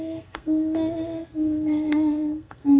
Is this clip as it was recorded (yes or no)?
no